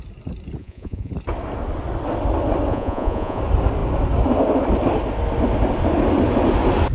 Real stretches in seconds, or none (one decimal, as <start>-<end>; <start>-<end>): 0.0-0.6; 1.1-2.7; 3.4-6.9